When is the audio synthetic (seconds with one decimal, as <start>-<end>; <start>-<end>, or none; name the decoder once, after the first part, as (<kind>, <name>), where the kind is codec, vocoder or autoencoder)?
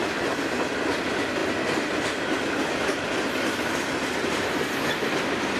none